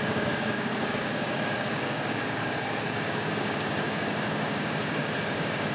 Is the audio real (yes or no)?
no